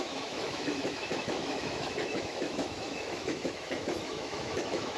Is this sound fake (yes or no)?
yes